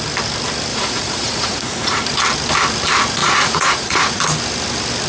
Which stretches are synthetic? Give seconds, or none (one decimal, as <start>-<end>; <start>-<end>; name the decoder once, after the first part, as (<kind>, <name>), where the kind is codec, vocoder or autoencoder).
0.7-2.1 (vocoder, Vocos); 3.2-4.2